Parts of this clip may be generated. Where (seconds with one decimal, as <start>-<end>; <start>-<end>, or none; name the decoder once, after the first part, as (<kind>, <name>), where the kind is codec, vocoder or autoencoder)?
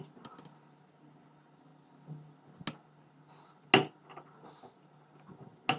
none